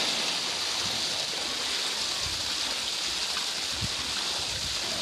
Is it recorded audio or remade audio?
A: recorded